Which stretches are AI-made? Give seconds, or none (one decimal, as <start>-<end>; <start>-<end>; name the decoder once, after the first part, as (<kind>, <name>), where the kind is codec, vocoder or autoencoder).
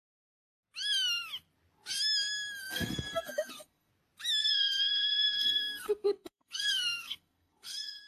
2.6-3.9 (codec, SNAC); 4.4-8.1